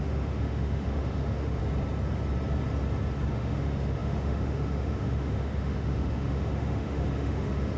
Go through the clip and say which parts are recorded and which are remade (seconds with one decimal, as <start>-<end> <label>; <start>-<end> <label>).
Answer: 0.0-1.6 remade; 1.6-3.3 recorded; 3.3-7.8 remade